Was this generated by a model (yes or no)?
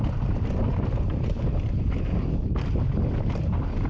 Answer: no